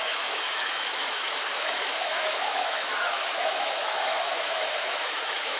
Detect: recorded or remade remade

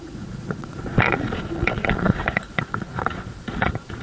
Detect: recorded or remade remade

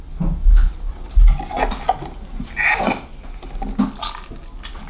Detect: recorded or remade recorded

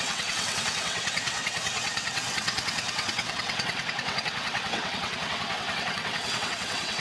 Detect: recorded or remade remade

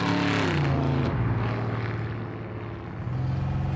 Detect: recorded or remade recorded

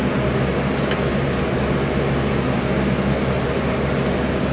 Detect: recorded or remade recorded